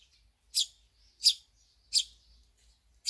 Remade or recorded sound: recorded